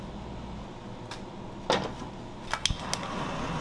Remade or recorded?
recorded